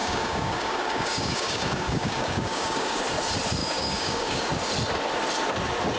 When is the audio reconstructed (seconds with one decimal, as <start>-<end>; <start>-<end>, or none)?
0.0-3.0; 3.6-4.5